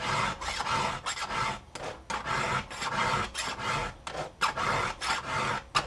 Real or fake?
real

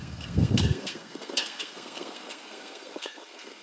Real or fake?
fake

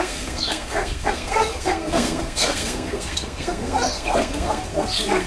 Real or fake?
fake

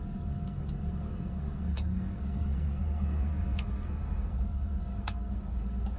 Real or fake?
fake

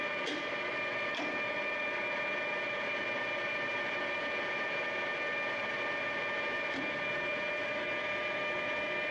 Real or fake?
real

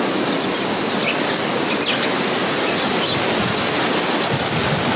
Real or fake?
real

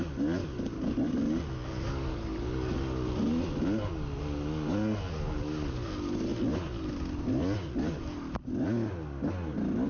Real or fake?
real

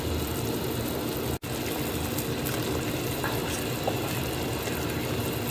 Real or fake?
real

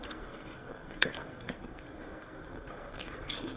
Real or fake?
fake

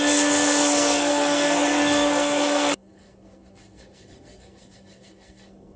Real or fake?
fake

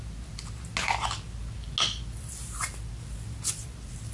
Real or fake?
real